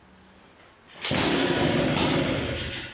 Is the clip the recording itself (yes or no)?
yes